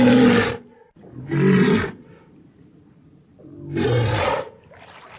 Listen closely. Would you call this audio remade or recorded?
recorded